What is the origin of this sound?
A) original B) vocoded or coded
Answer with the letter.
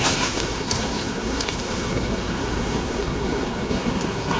B